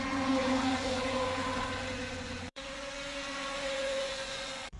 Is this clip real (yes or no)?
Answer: no